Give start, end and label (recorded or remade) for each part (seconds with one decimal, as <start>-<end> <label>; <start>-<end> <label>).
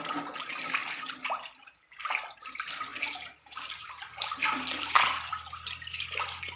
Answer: 0.0-6.6 recorded